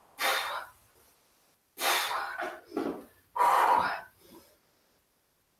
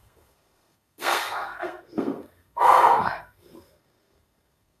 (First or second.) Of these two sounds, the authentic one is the first